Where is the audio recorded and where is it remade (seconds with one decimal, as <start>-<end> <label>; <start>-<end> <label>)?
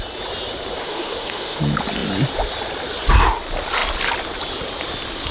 0.0-0.8 recorded; 0.8-1.6 remade; 1.6-5.3 recorded